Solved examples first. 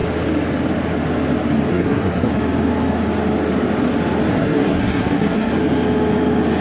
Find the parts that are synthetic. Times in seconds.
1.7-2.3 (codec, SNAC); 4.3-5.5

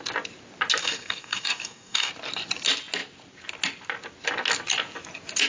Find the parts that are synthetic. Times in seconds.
0.8-2.1 (codec, DAC)

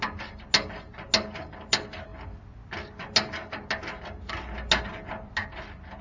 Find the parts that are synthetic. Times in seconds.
none

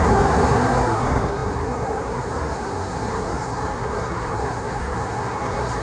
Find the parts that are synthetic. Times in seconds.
0.0-5.8 (codec, SNAC)

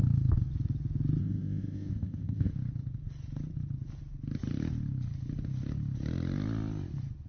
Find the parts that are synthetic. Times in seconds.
1.2-2.5 (codec, ZipCodec)

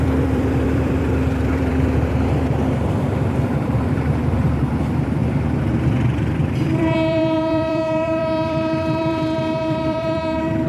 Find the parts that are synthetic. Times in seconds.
0.0-5.2 (vocoder, BigVGAN v2); 5.7-10.7

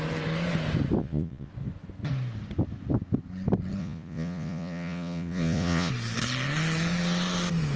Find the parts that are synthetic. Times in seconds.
1.0-1.5 (vocoder, Vocos); 3.8-5.9

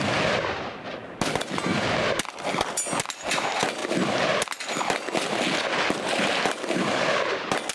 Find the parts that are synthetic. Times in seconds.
none